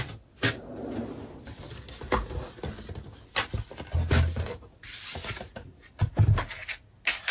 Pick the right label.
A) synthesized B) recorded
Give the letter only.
B